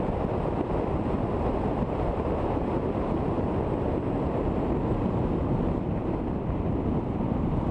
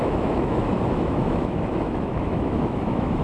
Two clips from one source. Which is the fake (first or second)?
second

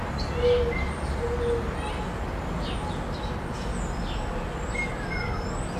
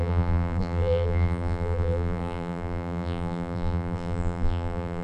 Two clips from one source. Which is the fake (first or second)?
second